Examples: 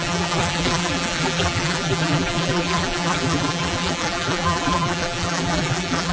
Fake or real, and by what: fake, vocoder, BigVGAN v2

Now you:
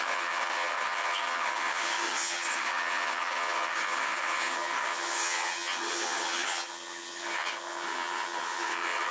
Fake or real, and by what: fake, vocoder, HiFi-GAN